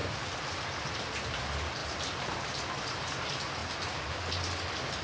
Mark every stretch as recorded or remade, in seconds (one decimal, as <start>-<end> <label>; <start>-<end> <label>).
0.0-5.0 recorded

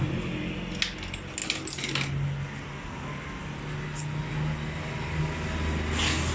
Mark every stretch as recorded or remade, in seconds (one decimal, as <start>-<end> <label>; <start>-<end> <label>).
0.0-6.3 recorded

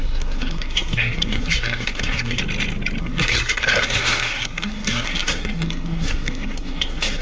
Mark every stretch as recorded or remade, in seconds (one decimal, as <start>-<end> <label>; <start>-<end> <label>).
0.0-2.4 remade; 2.4-3.0 recorded; 3.0-7.2 remade

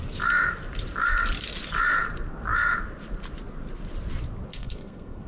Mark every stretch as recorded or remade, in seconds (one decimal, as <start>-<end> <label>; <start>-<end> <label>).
0.0-4.5 recorded; 4.5-5.3 remade

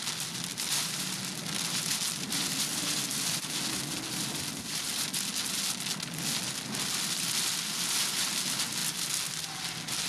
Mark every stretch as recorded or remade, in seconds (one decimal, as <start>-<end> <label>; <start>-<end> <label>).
0.0-0.5 recorded; 0.5-1.2 remade; 1.2-10.1 recorded

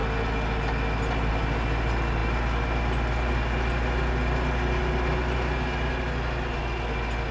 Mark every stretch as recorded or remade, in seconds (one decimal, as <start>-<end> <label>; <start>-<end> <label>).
0.0-7.3 recorded

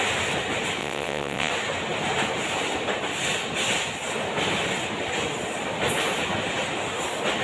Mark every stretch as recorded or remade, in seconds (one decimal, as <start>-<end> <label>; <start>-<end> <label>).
0.0-0.8 recorded; 0.8-1.5 remade; 1.5-7.4 recorded